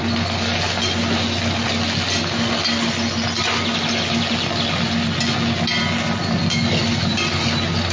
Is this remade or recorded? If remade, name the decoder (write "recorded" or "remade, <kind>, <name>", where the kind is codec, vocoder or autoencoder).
recorded